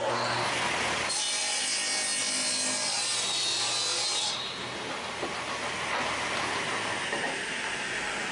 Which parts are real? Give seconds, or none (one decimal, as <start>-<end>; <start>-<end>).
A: 0.0-8.3